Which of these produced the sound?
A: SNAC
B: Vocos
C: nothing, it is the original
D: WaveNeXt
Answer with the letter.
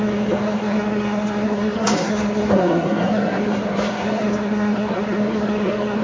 A